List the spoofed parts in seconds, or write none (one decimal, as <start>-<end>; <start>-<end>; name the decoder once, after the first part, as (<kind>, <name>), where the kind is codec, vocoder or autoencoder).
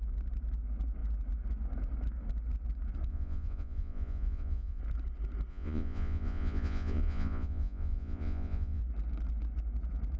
3.1-4.8 (vocoder, Vocos); 5.5-8.8